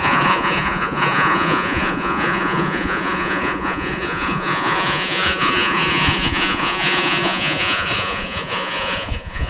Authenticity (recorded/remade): remade